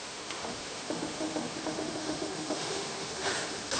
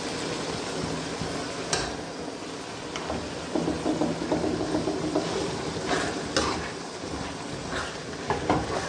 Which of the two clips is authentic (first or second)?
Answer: second